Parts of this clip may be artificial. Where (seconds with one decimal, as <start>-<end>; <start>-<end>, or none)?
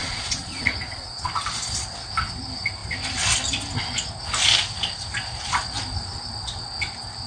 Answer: 0.0-1.3